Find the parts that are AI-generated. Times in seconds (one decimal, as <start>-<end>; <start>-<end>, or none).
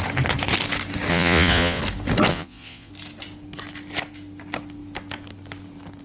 1.1-1.8; 2.3-2.9